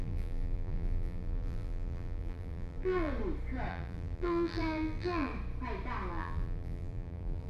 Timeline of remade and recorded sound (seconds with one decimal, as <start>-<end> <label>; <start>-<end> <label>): 0.0-3.1 remade; 3.1-3.7 recorded; 3.7-5.3 remade; 5.3-6.1 recorded; 6.1-7.5 remade